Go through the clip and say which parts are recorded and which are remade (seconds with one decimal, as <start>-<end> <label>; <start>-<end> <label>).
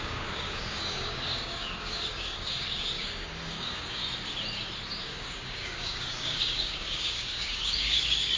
0.0-4.0 remade; 4.0-5.0 recorded; 5.0-8.4 remade